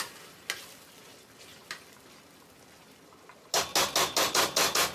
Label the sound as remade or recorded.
recorded